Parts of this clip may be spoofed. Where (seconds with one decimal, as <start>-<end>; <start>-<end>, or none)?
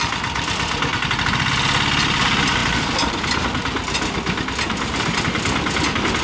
none